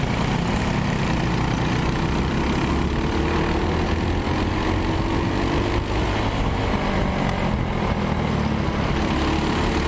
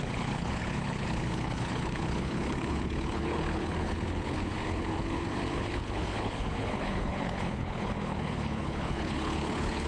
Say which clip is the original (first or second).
first